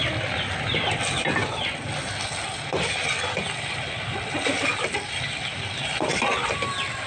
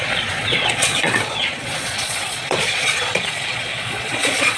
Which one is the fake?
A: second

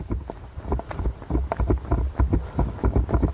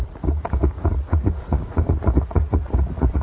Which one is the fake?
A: second